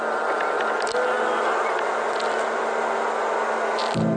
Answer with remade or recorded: recorded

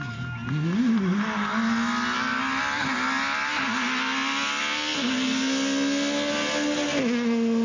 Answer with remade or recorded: recorded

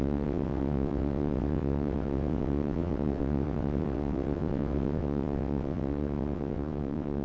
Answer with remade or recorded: remade